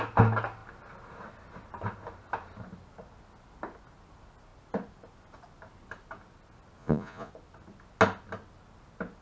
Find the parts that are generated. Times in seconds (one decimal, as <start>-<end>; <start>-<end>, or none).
6.8-7.3